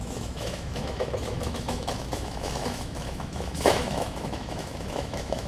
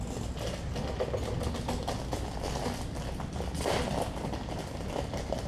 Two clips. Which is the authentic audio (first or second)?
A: second